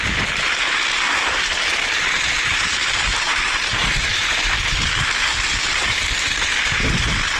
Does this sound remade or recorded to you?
remade